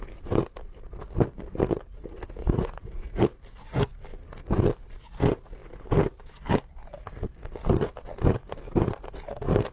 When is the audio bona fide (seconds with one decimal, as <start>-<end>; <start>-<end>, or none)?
0.0-2.4; 3.2-9.7